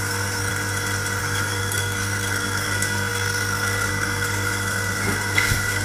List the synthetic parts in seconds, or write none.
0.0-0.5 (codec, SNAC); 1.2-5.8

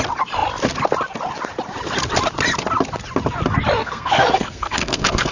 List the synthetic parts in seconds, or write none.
3.8-5.3 (codec, SNAC)